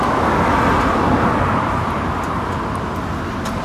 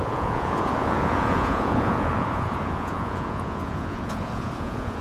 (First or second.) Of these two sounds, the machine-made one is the second